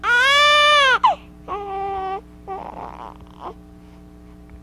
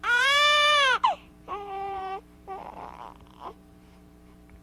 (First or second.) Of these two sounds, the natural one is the first